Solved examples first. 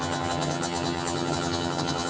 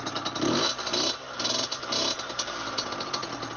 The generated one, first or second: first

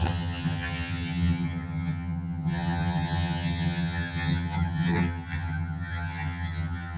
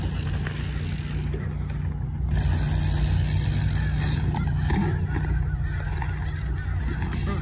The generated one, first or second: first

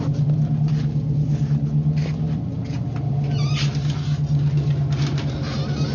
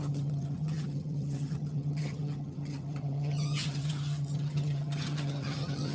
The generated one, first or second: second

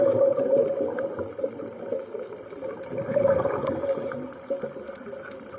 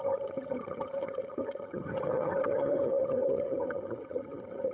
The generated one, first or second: second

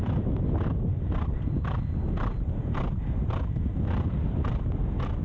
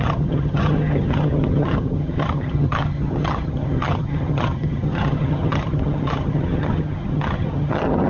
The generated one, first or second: second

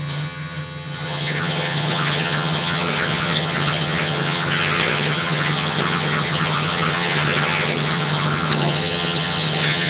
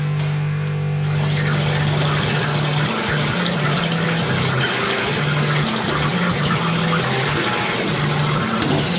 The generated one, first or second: first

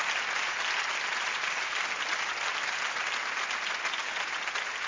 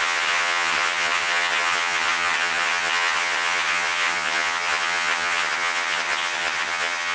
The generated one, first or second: second